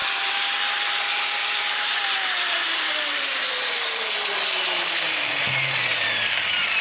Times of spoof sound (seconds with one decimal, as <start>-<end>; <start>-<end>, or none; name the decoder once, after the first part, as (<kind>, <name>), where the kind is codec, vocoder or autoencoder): 0.0-6.8 (vocoder, BigVGAN v2)